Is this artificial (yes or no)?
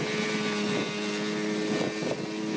no